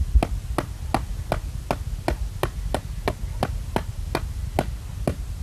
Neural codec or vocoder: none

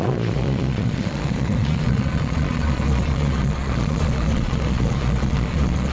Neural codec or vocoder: vocoder, Vocos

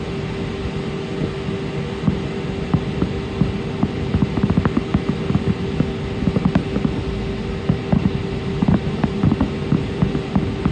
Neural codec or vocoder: none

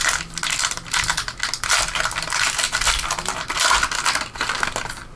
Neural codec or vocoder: none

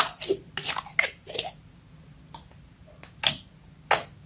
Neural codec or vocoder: none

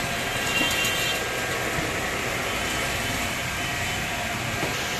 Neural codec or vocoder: none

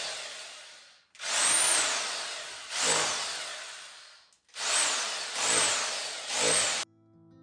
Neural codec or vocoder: none